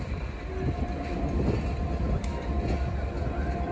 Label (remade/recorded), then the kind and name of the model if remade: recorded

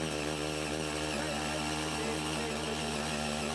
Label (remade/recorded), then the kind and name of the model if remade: recorded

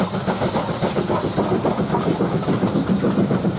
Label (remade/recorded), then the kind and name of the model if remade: recorded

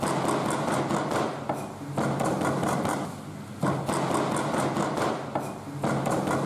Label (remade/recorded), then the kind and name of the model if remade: recorded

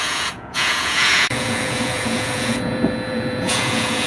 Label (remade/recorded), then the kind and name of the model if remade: remade, vocoder, Vocos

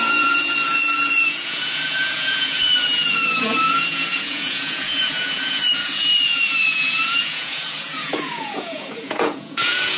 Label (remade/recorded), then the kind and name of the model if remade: remade, vocoder, Vocos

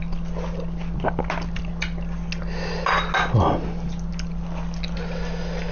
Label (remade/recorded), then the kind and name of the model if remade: recorded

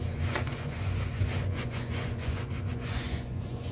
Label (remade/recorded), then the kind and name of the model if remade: remade, vocoder, Vocos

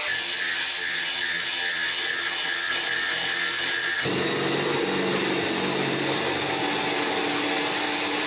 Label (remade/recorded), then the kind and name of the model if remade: recorded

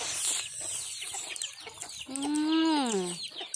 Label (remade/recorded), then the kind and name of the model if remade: recorded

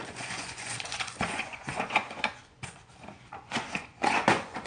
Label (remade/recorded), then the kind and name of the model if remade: remade, vocoder, Vocos